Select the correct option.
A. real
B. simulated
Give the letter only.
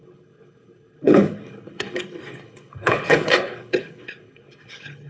B